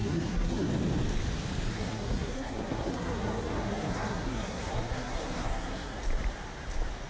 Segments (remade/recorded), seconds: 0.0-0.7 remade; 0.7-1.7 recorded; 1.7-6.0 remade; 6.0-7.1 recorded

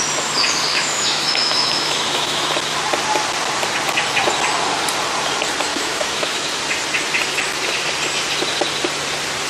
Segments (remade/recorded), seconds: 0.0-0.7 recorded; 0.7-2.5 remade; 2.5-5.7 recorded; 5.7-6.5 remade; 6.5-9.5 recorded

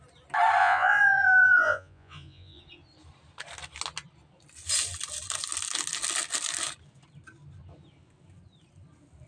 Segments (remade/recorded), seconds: 0.0-0.6 recorded; 0.6-2.6 remade; 2.6-9.3 recorded

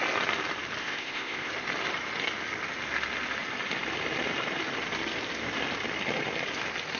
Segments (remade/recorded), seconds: 0.0-0.8 recorded; 0.8-1.5 remade; 1.5-7.0 recorded

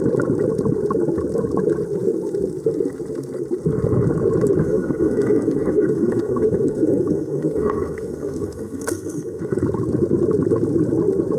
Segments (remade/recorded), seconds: 0.0-4.6 recorded; 4.6-9.6 remade; 9.6-11.4 recorded